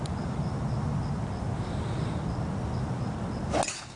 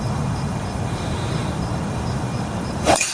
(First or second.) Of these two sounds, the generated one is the second